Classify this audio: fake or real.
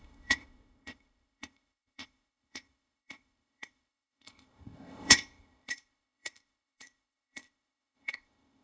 fake